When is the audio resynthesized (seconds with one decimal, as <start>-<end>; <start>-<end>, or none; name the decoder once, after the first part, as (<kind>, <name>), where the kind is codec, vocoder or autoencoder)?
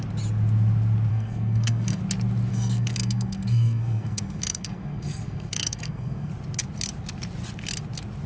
1.1-2.0 (codec, SNAC); 2.5-6.3